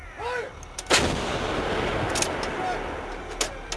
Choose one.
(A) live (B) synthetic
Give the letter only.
A